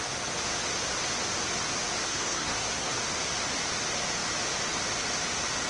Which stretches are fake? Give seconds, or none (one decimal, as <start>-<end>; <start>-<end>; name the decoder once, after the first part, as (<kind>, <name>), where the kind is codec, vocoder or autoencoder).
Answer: 2.1-2.9 (codec, SNAC)

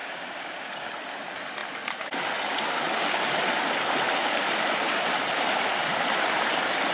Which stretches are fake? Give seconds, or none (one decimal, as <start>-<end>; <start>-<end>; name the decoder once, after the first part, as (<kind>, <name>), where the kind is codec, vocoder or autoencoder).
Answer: 0.0-0.9 (codec, DAC)

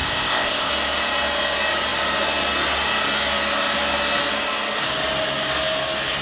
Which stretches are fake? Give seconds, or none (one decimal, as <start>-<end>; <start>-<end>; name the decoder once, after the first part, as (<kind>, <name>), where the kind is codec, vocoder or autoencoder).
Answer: 0.0-0.7 (codec, ZipCodec)

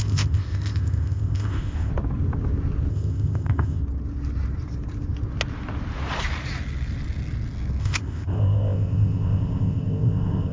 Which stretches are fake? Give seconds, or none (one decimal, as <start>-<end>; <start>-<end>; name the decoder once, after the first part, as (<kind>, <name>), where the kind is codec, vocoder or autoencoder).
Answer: 0.0-1.9 (codec, ZipCodec); 2.9-3.8; 7.8-10.5

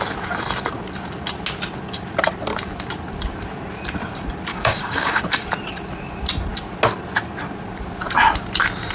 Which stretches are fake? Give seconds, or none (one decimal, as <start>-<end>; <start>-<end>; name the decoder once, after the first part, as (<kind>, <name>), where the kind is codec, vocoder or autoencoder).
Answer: 4.5-5.2 (codec, DAC)

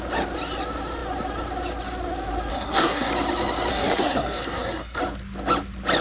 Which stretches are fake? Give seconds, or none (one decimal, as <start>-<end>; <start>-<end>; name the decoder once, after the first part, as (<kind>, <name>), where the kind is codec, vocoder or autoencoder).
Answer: 2.5-3.1 (codec, SNAC); 3.7-5.0

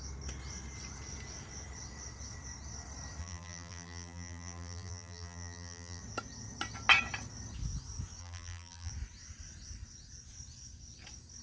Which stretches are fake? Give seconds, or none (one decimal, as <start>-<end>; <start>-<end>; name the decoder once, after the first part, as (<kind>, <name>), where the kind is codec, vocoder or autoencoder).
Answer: 3.2-6.0 (vocoder, BigVGAN v2); 8.2-8.9

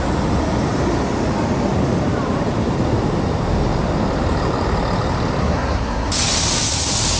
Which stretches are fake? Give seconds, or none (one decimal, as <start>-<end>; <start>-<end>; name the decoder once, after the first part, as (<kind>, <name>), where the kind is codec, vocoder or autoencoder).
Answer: 5.4-6.1 (codec, SNAC)